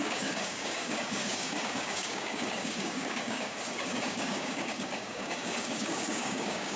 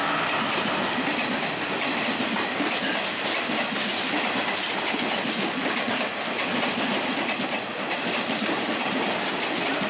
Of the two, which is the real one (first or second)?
second